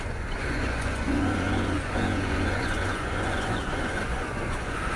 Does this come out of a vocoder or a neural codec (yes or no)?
yes